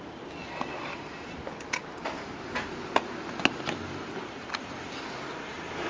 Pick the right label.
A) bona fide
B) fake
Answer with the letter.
A